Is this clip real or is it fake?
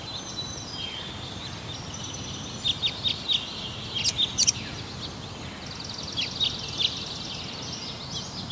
real